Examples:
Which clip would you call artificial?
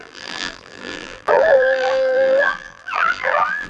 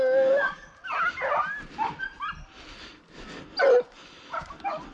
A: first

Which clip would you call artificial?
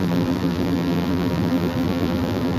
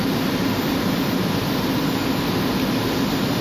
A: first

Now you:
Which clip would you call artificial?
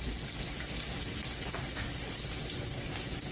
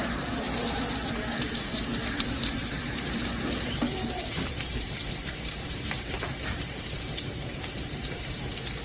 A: second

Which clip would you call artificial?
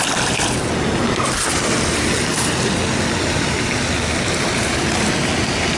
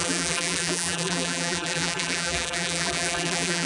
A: second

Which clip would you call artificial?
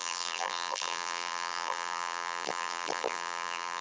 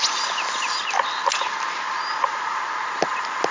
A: first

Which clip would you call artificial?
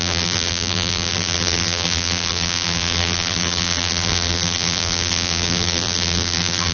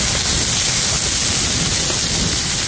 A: first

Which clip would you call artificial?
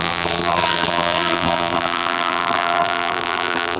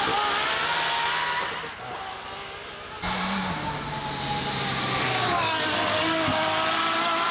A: first